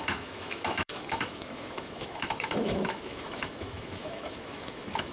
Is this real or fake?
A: fake